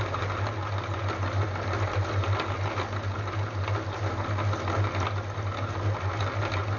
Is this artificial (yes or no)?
no